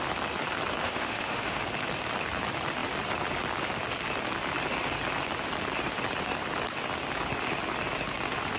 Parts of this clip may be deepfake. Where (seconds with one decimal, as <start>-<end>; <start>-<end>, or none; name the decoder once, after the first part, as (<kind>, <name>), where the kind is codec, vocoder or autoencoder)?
0.8-1.6 (autoencoder, DAC-VAE)